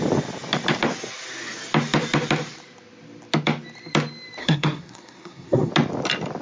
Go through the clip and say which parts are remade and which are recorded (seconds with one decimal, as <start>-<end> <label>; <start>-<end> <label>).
0.0-4.4 recorded; 4.4-5.7 remade; 5.7-6.4 recorded